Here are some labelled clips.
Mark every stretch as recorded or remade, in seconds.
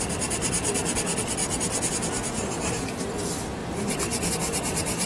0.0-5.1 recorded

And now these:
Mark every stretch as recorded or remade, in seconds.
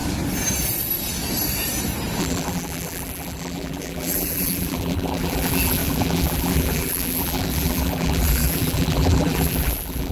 0.0-2.2 recorded; 2.2-10.1 remade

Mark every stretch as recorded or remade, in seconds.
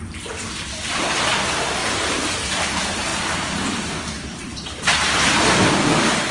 0.0-1.8 recorded; 1.8-2.7 remade; 2.7-3.1 recorded; 3.1-3.9 remade; 3.9-4.3 recorded; 4.3-5.5 remade; 5.5-6.3 recorded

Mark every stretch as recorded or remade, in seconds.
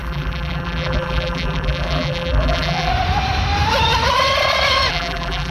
0.0-2.9 remade; 2.9-4.9 recorded; 4.9-5.5 remade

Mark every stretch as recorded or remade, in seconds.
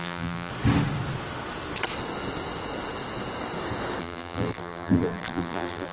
0.0-0.5 remade; 0.5-4.0 recorded; 4.0-5.9 remade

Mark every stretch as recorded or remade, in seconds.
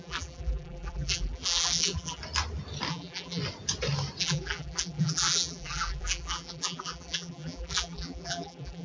0.0-2.2 remade; 2.2-2.9 recorded; 2.9-3.4 remade; 3.4-4.2 recorded; 4.2-8.8 remade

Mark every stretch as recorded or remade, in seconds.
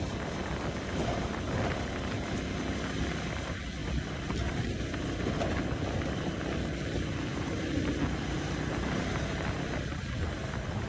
0.0-7.3 recorded; 7.3-7.9 remade; 7.9-10.9 recorded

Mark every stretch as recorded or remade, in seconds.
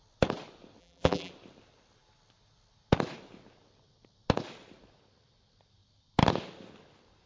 0.0-0.8 recorded; 0.8-1.3 remade; 1.3-7.3 recorded